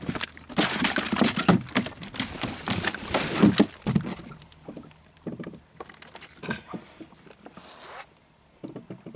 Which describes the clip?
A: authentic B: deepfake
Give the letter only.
A